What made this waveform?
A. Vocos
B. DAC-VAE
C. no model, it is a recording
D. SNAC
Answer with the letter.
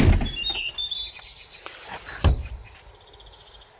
C